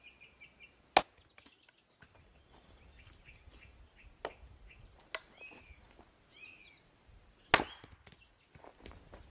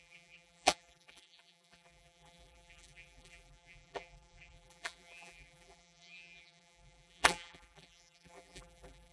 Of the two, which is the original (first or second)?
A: first